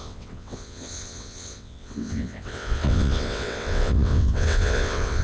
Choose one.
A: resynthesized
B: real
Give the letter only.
A